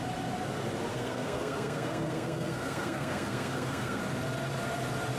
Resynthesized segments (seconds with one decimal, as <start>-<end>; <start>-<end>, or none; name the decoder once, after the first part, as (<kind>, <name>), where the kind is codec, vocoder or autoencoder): 0.9-4.0 (codec, SNAC)